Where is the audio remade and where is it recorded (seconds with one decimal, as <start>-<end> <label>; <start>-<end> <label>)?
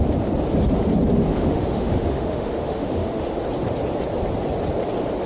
0.0-1.3 recorded; 1.3-3.4 remade; 3.4-5.3 recorded